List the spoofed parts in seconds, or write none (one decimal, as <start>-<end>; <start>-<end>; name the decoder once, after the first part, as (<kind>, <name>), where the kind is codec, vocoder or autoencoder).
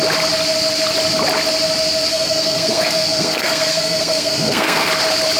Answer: 2.1-4.9 (codec, SNAC)